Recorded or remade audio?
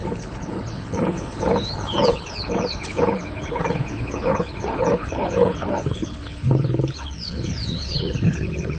remade